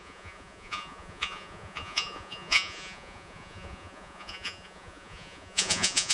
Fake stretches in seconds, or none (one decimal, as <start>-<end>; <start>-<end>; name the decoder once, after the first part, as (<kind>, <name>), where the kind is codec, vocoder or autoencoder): 0.0-6.1 (vocoder, Vocos)